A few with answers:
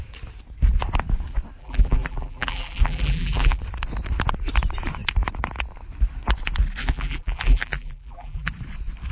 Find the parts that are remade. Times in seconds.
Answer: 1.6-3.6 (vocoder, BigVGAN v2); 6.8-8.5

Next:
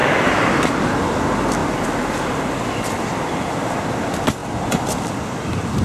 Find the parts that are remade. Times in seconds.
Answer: 0.0-0.5 (vocoder, BigVGAN v2); 1.6-3.6; 4.4-5.0